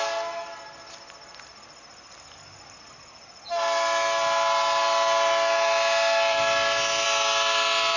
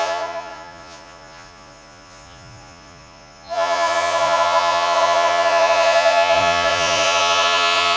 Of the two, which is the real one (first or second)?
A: first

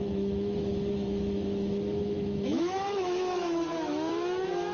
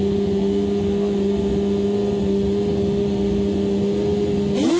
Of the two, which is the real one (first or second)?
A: second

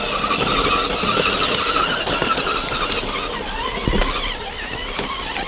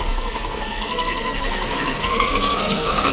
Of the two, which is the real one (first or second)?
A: first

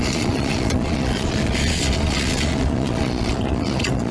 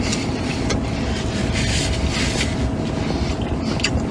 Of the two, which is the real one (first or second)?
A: second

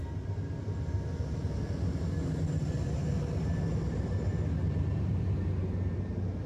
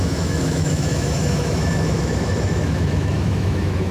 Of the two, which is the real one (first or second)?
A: first